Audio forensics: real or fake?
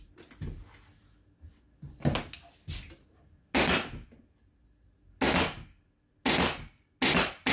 real